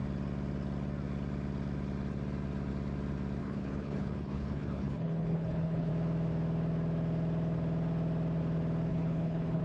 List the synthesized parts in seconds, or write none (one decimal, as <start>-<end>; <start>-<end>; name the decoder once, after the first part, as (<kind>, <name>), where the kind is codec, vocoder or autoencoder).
3.4-5.9 (codec, HILCodec); 8.9-9.6